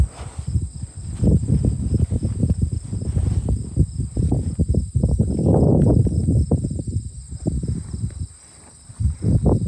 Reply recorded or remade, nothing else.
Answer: recorded